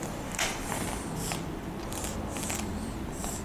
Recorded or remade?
remade